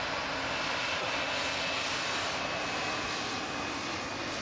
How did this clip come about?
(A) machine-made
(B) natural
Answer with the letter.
B